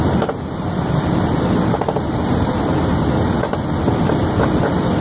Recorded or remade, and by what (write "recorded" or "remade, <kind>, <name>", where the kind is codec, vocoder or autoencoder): recorded